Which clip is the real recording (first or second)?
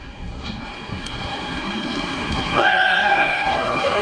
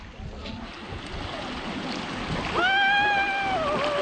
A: second